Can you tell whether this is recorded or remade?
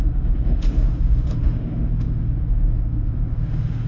remade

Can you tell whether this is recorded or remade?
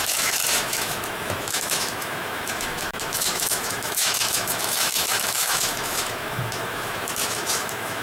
remade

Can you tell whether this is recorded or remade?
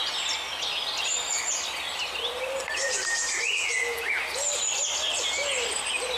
recorded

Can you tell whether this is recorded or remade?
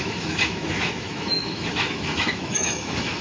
remade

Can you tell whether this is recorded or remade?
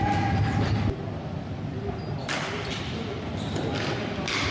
recorded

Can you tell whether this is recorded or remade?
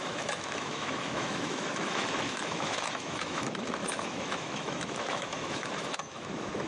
remade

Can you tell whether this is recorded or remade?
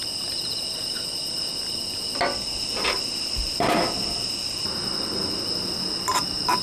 recorded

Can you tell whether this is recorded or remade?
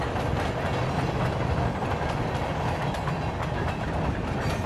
recorded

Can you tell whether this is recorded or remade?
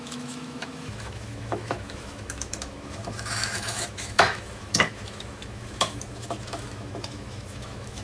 remade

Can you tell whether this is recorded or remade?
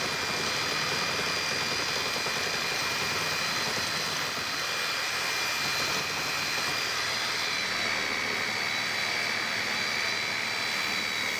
recorded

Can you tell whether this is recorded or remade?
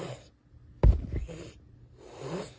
recorded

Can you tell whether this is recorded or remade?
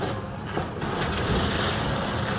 recorded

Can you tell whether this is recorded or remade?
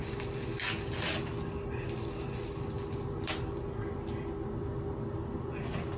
recorded